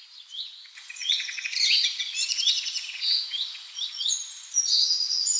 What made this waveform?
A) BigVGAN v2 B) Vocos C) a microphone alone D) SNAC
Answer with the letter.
B